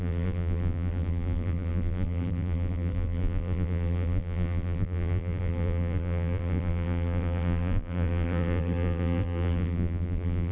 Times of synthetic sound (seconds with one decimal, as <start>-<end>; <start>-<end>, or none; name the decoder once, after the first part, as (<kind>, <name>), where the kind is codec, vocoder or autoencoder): 0.0-10.5 (vocoder, BigVGAN v2)